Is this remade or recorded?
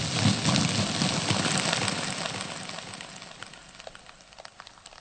recorded